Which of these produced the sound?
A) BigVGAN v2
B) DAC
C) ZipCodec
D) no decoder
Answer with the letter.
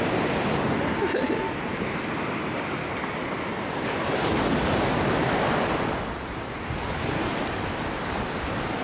D